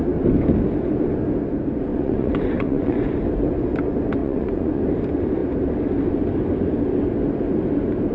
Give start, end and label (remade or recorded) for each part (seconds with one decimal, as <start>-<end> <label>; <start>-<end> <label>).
0.0-1.9 recorded; 1.9-3.2 remade; 3.2-4.2 recorded; 4.2-4.8 remade; 4.8-8.1 recorded